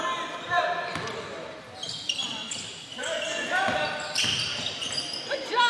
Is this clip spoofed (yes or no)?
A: no